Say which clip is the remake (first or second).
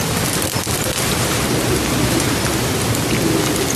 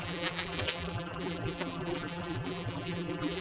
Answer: second